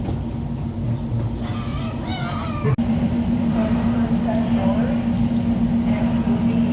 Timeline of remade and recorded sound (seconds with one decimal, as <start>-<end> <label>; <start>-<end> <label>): 0.0-1.7 recorded; 1.7-4.1 remade; 4.1-6.7 recorded